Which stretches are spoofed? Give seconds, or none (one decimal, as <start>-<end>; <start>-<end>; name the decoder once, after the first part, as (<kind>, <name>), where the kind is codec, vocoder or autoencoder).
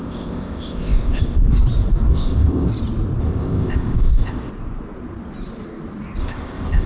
0.0-1.4 (codec, ZipCodec); 2.1-2.7; 3.2-4.5; 6.2-6.9